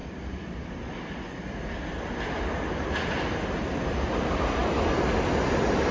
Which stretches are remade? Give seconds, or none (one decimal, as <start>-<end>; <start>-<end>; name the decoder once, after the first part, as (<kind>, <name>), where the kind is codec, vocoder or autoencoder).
none